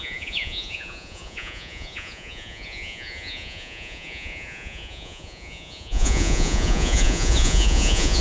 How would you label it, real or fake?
fake